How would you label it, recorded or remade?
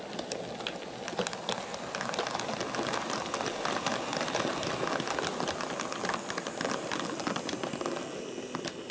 recorded